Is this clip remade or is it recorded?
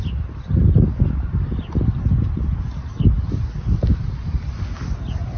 recorded